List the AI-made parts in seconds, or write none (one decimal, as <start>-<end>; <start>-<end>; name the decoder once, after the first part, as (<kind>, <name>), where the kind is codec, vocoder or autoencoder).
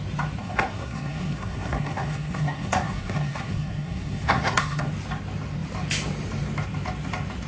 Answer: 0.4-4.9 (codec, SNAC)